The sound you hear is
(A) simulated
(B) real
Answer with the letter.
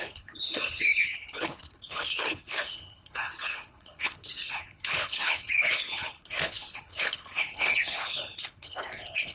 A